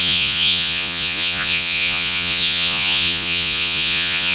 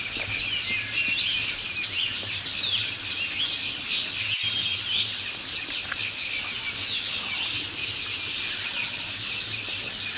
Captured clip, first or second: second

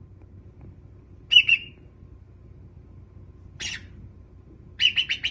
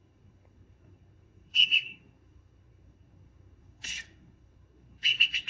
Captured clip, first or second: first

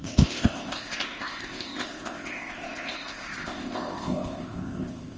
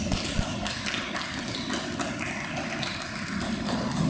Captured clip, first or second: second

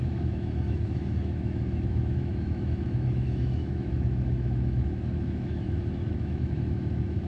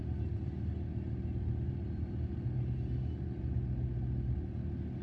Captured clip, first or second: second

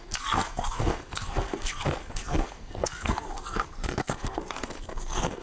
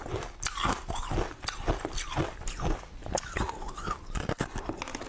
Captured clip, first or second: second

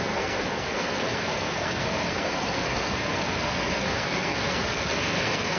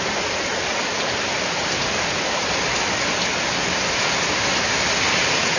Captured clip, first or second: second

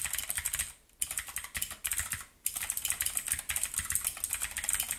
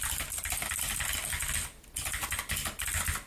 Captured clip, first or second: second